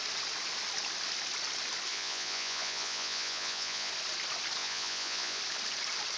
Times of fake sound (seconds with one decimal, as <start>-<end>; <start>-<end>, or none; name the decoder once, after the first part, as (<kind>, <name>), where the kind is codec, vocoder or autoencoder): 1.9-3.9 (vocoder, Vocos); 4.6-5.4